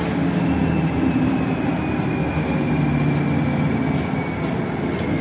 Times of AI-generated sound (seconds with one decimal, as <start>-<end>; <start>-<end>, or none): 0.6-1.5